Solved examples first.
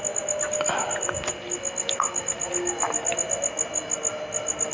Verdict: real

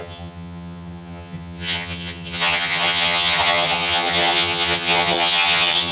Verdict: fake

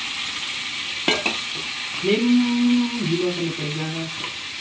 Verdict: real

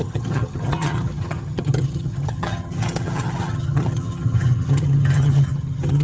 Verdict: fake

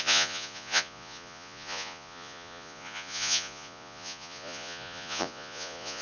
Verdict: fake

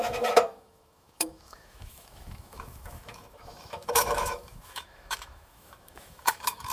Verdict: fake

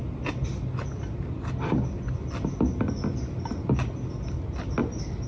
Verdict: real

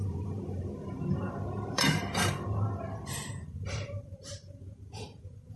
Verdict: fake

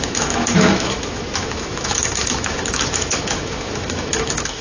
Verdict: fake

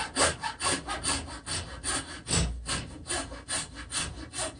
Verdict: real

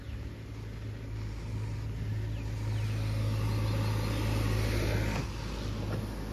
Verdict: real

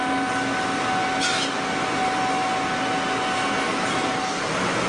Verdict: real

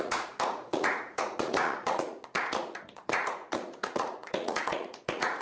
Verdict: fake